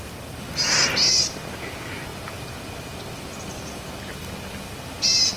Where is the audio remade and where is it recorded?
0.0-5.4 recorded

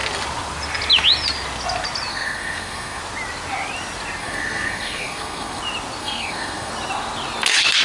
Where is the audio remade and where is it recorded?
0.0-2.1 recorded; 2.1-3.0 remade; 3.0-4.2 recorded; 4.2-5.6 remade; 5.6-6.0 recorded; 6.0-6.7 remade; 6.7-7.8 recorded

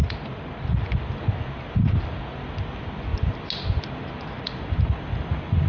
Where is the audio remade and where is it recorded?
0.0-5.7 recorded

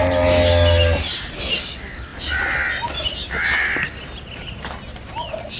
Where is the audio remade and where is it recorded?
0.0-5.6 recorded

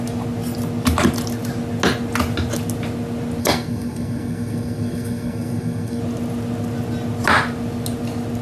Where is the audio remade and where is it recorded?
0.0-3.4 recorded; 3.4-6.0 remade; 6.0-8.4 recorded

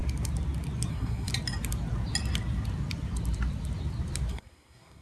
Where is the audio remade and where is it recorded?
0.0-0.9 recorded; 0.9-1.3 remade; 1.3-4.3 recorded; 4.3-5.0 remade